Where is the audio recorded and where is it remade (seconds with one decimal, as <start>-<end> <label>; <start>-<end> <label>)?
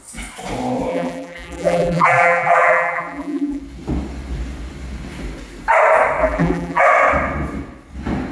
0.0-0.9 recorded; 0.9-3.6 remade; 3.6-6.2 recorded; 6.2-6.8 remade; 6.8-8.3 recorded